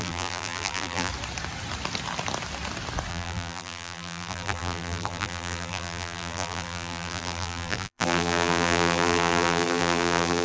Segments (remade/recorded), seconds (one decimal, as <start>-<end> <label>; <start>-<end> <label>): 0.0-1.1 remade; 1.1-3.1 recorded; 3.1-10.4 remade